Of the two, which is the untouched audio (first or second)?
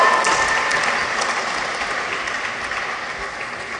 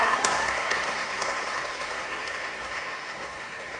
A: first